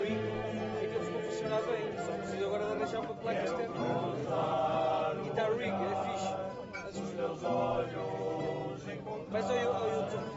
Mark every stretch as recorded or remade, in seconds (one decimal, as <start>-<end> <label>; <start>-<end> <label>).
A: 0.0-4.2 recorded; 4.2-5.0 remade; 5.0-10.4 recorded